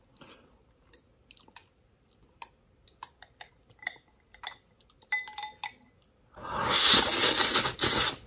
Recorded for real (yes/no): yes